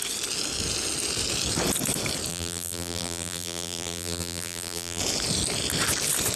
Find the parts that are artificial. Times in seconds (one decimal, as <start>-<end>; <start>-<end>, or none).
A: 2.3-5.0